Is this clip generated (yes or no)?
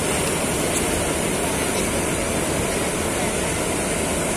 no